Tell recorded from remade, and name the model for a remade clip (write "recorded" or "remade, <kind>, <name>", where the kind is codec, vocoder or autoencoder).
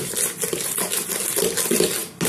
recorded